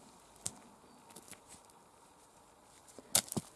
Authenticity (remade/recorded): recorded